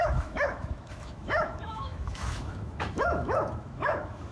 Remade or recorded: remade